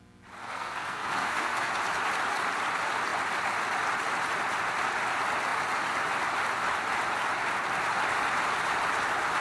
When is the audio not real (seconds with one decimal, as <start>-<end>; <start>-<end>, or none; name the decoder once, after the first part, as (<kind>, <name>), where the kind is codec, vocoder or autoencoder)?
0.4-1.7 (codec, SNAC)